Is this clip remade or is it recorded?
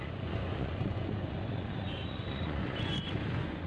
remade